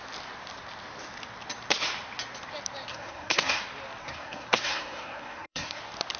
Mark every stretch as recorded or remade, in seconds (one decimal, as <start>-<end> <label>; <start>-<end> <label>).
0.0-2.9 recorded; 2.9-3.6 remade; 3.6-4.0 recorded; 4.0-5.8 remade; 5.8-6.2 recorded